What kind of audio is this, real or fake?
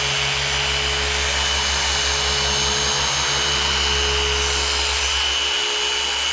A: real